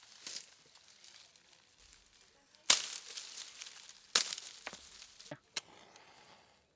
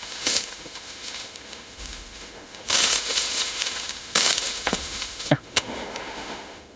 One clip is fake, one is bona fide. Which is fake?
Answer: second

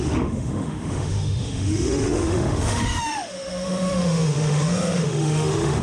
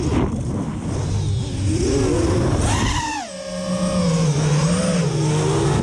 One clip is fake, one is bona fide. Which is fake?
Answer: first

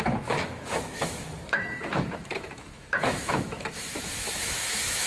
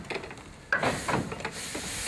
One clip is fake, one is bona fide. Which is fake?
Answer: first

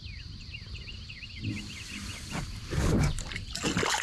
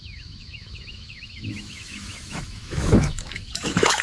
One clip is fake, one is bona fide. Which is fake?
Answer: second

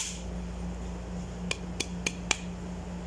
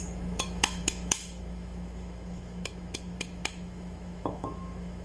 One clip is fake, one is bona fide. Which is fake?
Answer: second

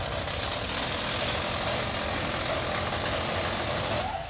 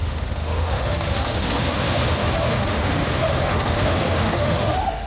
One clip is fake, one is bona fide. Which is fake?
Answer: second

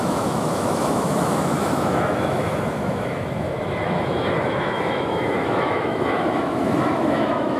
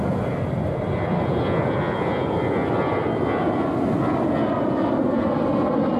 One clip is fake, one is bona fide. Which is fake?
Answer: first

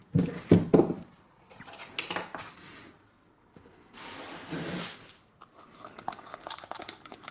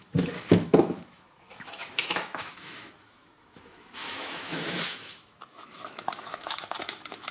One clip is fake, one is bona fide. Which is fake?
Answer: second